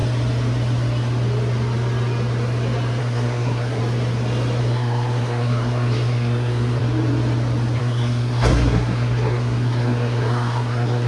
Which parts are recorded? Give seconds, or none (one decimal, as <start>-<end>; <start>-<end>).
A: 0.0-3.0; 3.8-4.6; 6.8-7.8